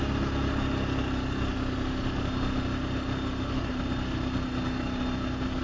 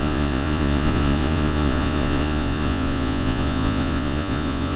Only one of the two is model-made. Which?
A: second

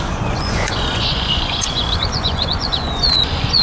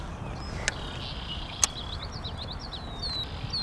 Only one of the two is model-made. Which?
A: first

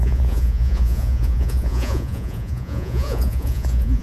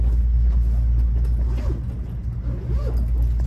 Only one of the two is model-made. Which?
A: first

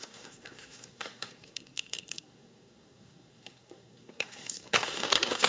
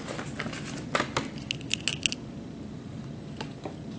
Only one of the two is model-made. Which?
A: first